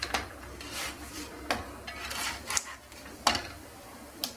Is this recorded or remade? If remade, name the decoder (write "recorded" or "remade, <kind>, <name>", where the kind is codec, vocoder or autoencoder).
recorded